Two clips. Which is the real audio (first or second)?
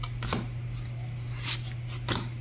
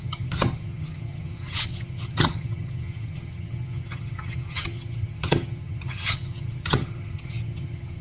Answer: first